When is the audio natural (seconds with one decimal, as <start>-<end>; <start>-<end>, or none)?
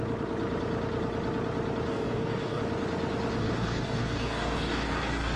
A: 0.0-1.9; 2.6-3.4